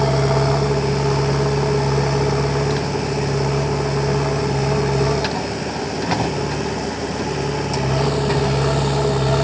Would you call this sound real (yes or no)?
yes